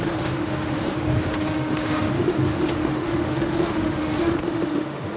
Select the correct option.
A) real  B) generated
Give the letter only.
B